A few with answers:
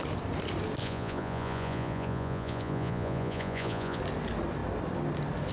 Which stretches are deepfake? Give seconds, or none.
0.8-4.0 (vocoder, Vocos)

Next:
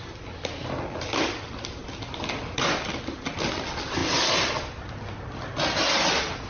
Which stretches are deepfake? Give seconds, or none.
none

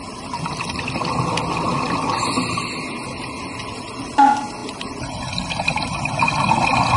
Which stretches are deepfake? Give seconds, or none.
none

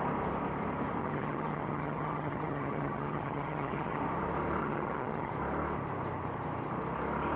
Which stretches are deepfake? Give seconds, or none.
1.0-4.0 (vocoder, HiFi-GAN); 4.6-5.3